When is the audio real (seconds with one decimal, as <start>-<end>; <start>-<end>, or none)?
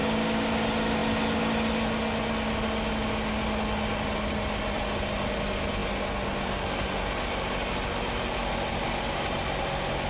0.5-10.1